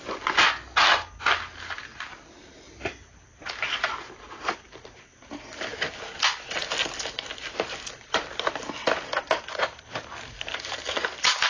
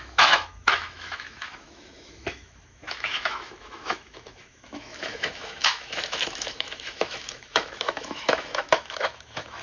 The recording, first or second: first